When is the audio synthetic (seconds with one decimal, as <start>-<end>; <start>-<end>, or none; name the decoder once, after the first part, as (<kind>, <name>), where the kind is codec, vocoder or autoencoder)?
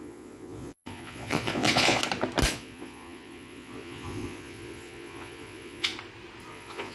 0.0-2.0 (vocoder, Vocos); 2.5-5.9; 6.5-6.9